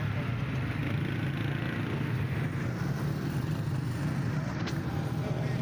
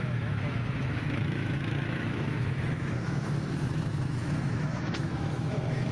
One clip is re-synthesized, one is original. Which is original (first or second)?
first